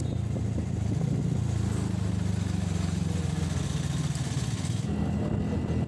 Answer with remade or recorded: recorded